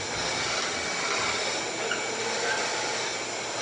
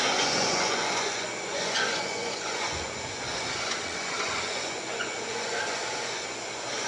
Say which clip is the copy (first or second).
second